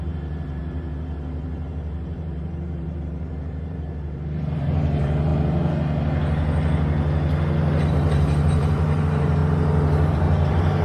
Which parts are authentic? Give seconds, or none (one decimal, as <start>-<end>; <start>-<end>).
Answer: 5.3-7.9; 9.4-10.1